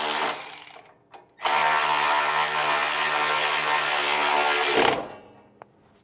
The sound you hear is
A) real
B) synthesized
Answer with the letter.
A